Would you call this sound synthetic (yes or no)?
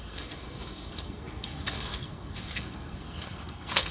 yes